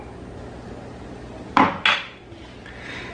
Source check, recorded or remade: recorded